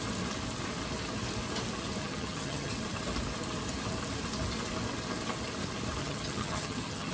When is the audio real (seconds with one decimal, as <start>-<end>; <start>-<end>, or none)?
0.0-2.0; 2.7-6.0